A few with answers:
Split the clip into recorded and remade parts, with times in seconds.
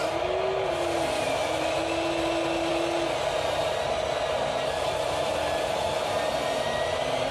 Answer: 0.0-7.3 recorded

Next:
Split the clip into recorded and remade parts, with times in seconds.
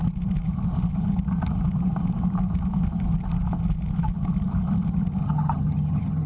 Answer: 0.0-5.2 recorded; 5.2-6.3 remade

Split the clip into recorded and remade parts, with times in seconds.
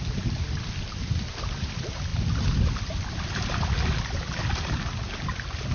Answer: 0.0-5.7 recorded